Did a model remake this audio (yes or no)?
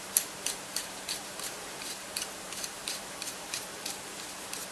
yes